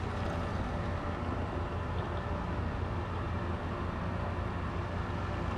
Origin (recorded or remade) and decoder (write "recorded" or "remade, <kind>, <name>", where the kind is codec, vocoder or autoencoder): recorded